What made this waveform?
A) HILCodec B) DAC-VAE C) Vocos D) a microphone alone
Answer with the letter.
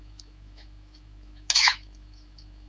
B